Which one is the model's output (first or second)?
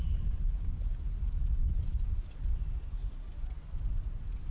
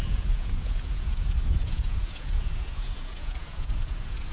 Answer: second